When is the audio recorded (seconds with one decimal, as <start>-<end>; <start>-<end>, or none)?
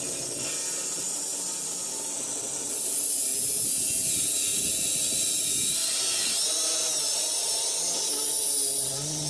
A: 0.0-4.5; 7.5-9.3